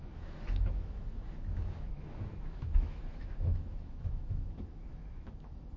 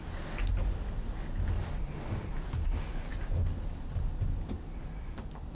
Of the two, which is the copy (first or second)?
first